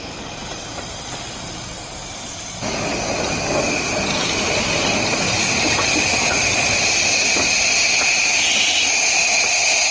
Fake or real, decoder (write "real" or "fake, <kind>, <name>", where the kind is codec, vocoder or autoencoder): real